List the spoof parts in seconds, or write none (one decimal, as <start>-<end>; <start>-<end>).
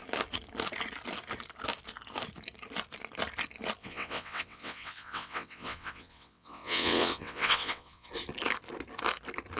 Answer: 3.8-8.1